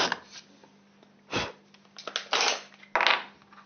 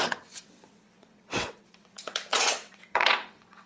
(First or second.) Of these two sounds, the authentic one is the first